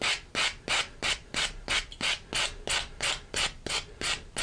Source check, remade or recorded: recorded